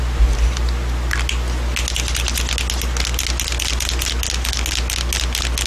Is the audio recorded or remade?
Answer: recorded